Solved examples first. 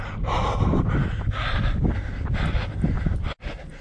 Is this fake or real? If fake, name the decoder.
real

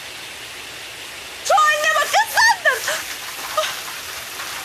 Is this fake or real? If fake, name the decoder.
real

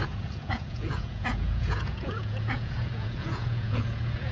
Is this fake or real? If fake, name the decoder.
fake, vocoder, Vocos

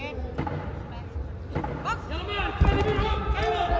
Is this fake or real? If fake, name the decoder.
real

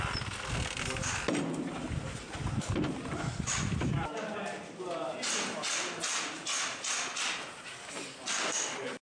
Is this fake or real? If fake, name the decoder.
real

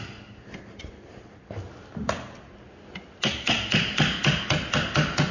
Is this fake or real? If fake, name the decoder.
real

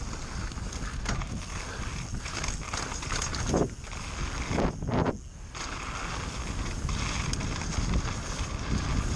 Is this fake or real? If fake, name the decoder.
real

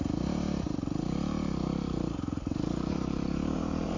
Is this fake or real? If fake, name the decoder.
fake, vocoder, BigVGAN v2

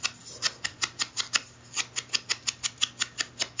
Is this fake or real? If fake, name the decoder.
real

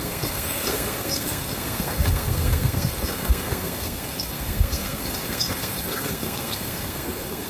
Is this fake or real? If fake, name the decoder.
fake, codec, SNAC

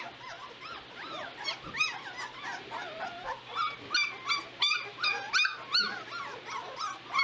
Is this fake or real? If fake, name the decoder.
real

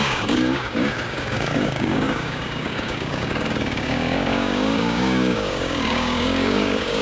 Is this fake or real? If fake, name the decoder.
fake, codec, DAC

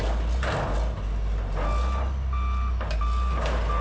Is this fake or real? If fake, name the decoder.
real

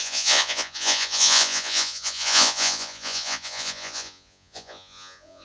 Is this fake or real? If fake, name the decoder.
fake, vocoder, Vocos